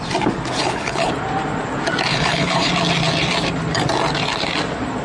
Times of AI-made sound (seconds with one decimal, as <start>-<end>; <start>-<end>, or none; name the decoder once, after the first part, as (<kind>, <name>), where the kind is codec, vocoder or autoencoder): 0.6-1.1 (codec, HILCodec); 2.1-2.7